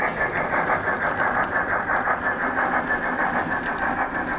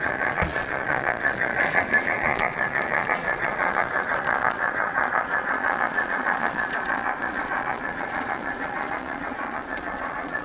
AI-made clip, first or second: second